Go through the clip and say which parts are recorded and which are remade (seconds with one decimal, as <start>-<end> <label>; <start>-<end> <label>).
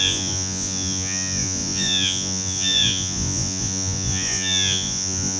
0.0-5.4 remade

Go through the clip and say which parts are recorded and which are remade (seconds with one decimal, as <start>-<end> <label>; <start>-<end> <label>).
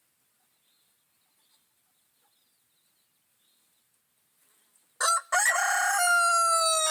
0.0-6.9 recorded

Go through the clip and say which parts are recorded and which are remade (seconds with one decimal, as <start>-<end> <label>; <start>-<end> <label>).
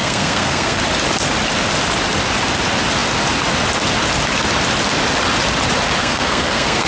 0.0-0.8 remade; 0.8-6.0 recorded; 6.0-6.9 remade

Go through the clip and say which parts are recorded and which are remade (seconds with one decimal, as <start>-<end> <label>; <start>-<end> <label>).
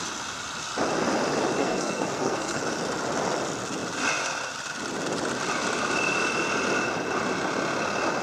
0.0-1.6 recorded; 1.6-2.6 remade; 2.6-8.2 recorded